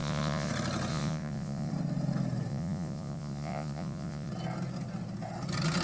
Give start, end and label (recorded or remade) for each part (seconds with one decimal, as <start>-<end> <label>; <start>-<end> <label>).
0.0-0.5 remade; 0.5-0.9 recorded; 0.9-1.7 remade; 1.7-2.5 recorded; 2.5-4.3 remade; 4.3-5.8 recorded